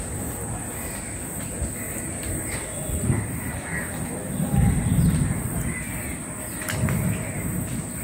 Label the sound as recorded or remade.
recorded